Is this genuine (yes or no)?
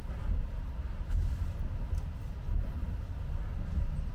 yes